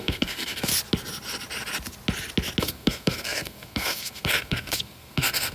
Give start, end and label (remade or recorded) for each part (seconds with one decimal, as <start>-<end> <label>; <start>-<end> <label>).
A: 0.0-0.7 remade; 0.7-2.6 recorded; 2.6-5.5 remade